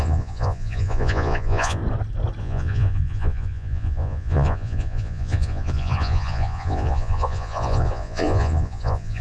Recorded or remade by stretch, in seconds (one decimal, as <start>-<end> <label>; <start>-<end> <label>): 0.0-1.8 remade; 1.8-2.4 recorded; 2.4-9.2 remade